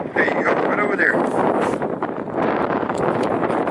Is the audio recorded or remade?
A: remade